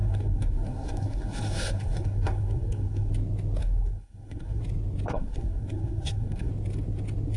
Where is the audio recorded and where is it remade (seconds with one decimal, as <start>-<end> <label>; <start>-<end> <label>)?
0.0-3.1 remade; 3.1-3.6 recorded; 3.6-4.6 remade; 4.6-5.1 recorded; 5.1-6.5 remade; 6.5-7.4 recorded